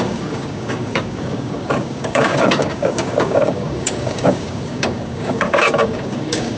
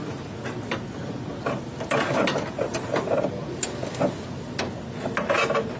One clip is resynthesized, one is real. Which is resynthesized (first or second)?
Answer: first